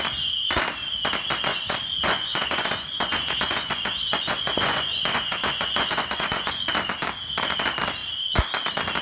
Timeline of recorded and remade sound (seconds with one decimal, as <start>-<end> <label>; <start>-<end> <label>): 0.0-1.5 recorded; 1.5-6.7 remade; 6.7-9.0 recorded